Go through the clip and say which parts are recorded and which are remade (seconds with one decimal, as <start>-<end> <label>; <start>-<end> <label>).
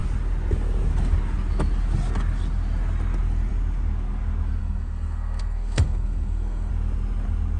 0.0-4.6 recorded; 4.6-6.7 remade; 6.7-7.6 recorded